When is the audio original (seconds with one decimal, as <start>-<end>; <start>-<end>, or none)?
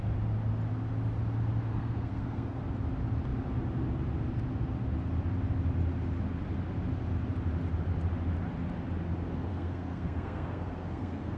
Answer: 0.0-1.7; 2.6-9.5